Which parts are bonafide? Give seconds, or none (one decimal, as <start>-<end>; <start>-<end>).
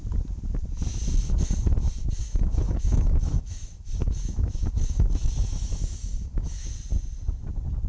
0.0-2.2; 6.7-7.9